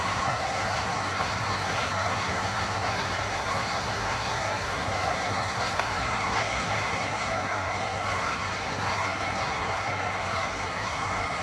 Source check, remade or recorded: remade